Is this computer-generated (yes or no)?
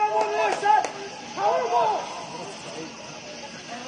no